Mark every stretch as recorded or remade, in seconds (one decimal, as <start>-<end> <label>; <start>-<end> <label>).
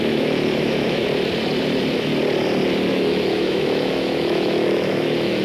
0.0-1.0 remade; 1.0-2.9 recorded; 2.9-5.4 remade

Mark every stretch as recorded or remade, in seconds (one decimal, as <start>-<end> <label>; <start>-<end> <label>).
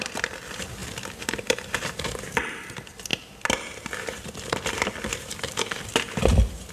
0.0-0.8 remade; 0.8-1.4 recorded; 1.4-3.1 remade; 3.1-3.7 recorded; 3.7-6.7 remade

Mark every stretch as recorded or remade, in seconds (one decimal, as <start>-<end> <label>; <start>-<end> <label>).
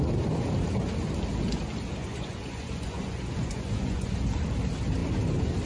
0.0-2.0 recorded; 2.0-4.1 remade; 4.1-5.7 recorded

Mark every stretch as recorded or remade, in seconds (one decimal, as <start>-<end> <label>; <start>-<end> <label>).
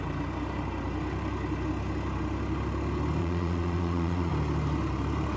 0.0-3.2 recorded; 3.2-4.3 remade; 4.3-5.4 recorded